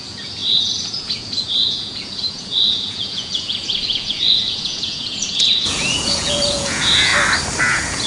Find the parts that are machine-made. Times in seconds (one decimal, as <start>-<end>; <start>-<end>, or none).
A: 0.0-7.1; 7.6-8.1